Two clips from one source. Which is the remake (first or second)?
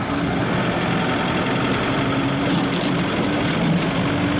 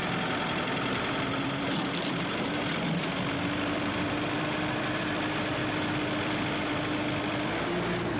second